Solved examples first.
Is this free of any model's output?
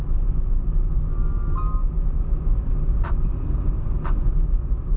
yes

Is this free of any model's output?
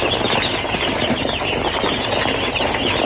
yes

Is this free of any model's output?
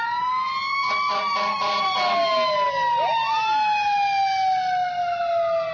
yes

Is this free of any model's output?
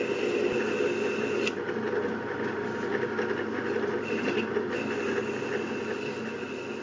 yes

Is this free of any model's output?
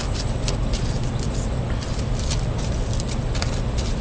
no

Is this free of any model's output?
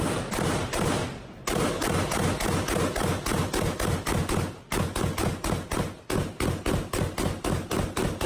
yes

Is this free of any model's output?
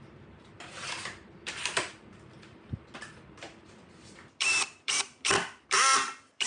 no